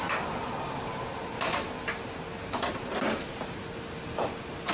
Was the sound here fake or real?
real